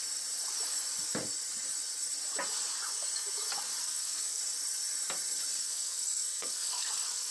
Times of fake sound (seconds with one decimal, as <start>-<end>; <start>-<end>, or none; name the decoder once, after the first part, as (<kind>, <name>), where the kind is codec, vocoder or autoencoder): 3.8-4.4 (codec, SNAC); 5.6-7.3